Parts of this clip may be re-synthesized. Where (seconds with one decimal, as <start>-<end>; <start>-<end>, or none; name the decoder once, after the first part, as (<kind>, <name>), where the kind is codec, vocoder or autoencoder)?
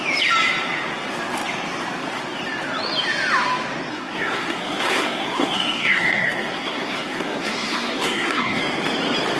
3.9-8.6 (codec, SNAC)